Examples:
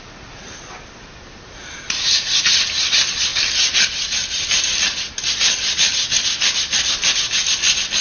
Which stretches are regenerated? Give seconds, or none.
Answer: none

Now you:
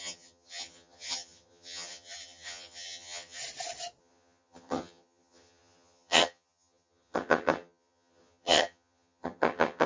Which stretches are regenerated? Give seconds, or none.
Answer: 0.0-3.4; 4.0-9.9